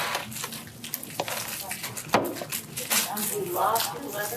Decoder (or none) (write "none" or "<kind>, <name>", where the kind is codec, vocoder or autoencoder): none